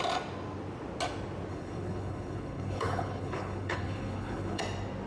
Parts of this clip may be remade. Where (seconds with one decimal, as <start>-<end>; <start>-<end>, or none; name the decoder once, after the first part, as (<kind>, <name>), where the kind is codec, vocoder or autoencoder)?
1.5-4.6 (codec, HILCodec)